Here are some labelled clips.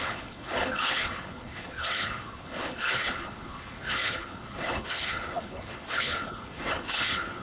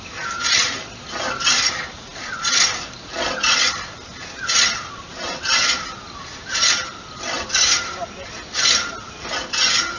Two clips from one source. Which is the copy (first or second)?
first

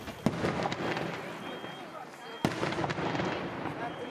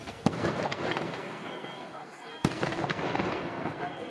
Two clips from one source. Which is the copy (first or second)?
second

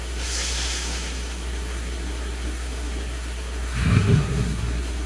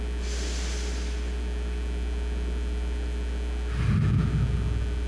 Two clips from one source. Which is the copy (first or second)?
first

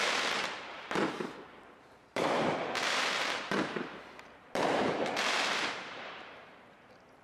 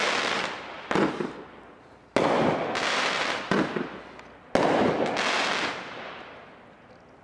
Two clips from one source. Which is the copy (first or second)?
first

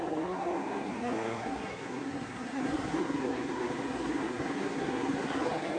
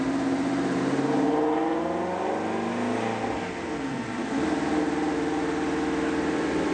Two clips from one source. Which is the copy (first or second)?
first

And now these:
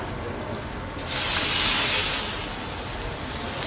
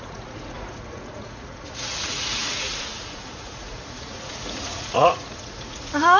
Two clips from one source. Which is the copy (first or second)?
second